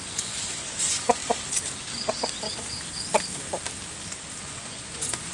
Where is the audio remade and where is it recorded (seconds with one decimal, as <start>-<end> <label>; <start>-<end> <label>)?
0.0-1.2 remade; 1.2-4.4 recorded; 4.4-5.3 remade